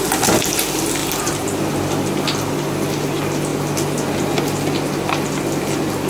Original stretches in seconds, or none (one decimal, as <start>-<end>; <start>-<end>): 0.0-1.0; 1.9-6.1